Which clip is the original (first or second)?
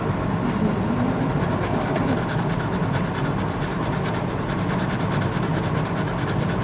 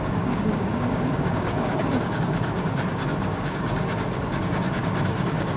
first